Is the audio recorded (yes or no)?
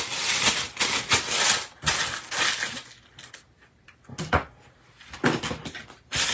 yes